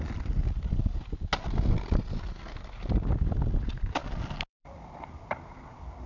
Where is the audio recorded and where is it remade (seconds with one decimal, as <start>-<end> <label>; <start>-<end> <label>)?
0.0-0.4 remade; 0.4-3.6 recorded; 3.6-4.0 remade; 4.0-4.5 recorded; 4.5-6.1 remade